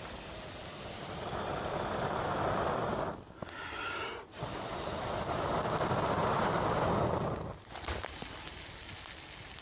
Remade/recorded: recorded